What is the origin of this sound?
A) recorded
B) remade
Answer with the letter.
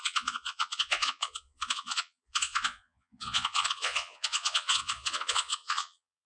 B